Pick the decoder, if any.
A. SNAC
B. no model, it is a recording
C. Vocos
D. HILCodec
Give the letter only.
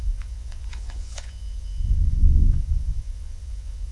C